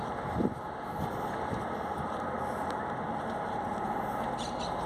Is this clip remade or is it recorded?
recorded